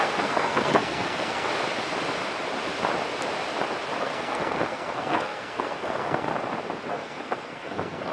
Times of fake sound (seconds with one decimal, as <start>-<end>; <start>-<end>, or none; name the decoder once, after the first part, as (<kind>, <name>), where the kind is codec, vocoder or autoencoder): 0.0-1.5 (codec, SNAC); 4.0-6.3; 6.9-8.1